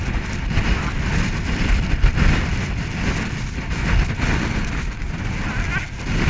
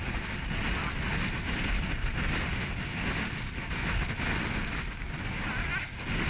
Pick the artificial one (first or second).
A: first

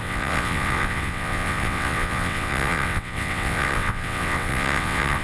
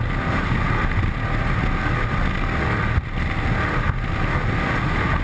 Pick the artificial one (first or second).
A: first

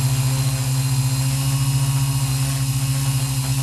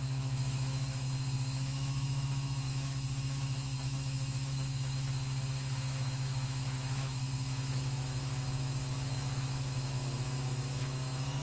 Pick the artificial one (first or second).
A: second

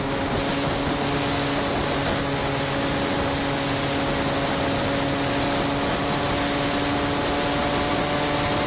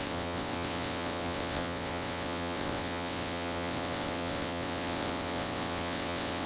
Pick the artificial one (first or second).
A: second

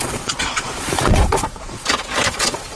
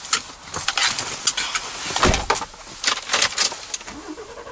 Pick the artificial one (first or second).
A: first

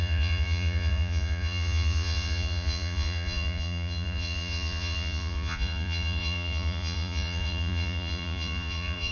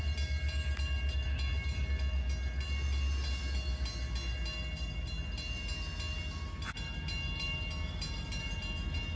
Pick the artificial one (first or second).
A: first